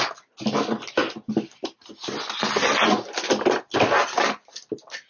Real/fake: real